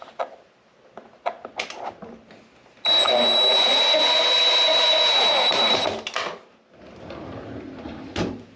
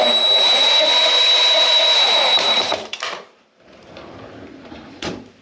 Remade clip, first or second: second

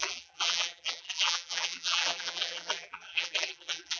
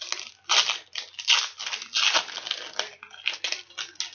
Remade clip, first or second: first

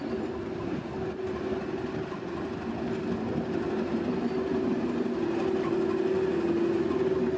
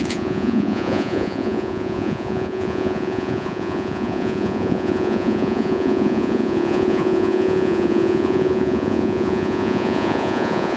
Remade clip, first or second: second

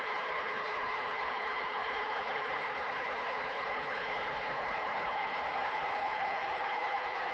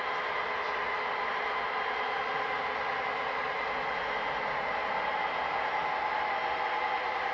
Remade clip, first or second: first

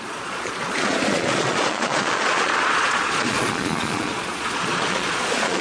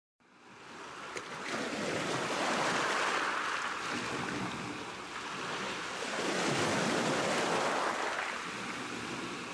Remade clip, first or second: first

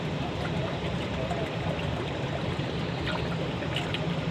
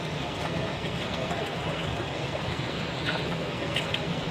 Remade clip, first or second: second